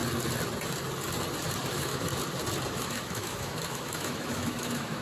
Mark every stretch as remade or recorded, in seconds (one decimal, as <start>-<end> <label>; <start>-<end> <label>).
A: 0.0-1.7 recorded; 1.7-2.1 remade; 2.1-2.7 recorded; 2.7-5.0 remade